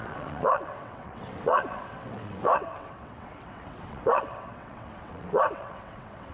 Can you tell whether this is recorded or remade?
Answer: remade